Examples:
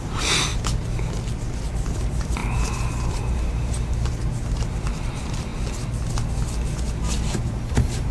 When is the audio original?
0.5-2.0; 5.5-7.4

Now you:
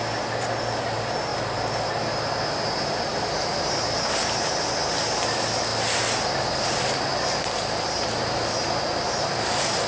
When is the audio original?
0.0-9.9

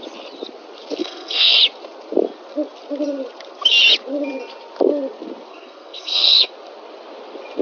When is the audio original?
0.0-1.0; 1.6-5.5; 6.5-7.6

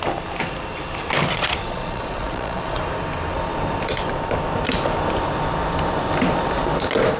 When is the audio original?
0.0-1.3; 2.8-7.2